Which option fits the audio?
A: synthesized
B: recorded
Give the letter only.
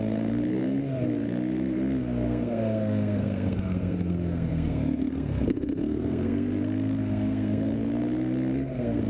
A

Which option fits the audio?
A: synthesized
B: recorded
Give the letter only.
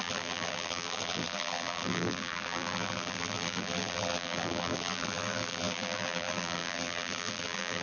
A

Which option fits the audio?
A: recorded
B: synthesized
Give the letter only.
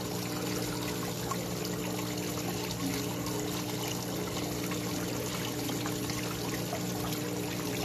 A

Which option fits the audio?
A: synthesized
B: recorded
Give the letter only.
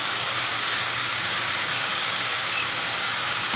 A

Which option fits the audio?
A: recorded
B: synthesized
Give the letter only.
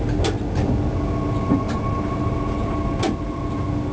A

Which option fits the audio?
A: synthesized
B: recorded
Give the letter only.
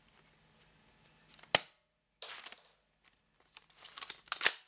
B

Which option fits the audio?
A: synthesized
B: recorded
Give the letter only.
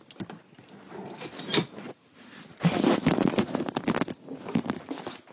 B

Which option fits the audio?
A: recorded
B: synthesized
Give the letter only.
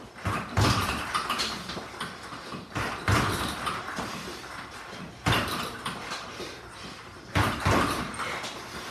A